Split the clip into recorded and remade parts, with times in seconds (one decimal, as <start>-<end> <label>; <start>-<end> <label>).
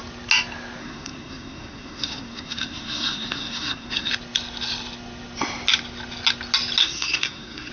0.0-0.8 recorded; 0.8-4.1 remade; 4.1-6.8 recorded; 6.8-7.7 remade